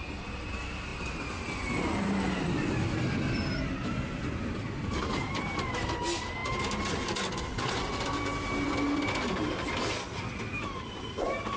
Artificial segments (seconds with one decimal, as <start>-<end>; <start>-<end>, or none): none